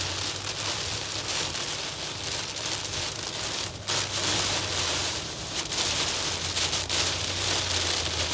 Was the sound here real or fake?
real